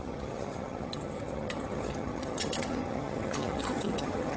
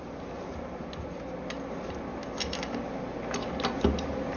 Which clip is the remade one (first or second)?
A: first